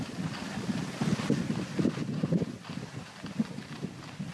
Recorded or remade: recorded